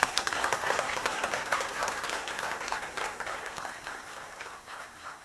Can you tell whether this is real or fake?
fake